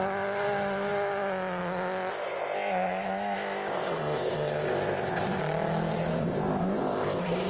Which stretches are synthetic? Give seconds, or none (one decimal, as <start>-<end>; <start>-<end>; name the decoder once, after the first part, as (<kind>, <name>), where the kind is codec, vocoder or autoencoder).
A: 2.1-5.4 (codec, ZipCodec); 6.2-7.5